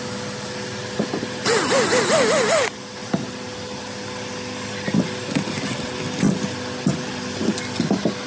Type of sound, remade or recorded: recorded